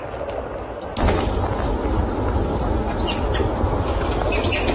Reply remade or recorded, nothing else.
recorded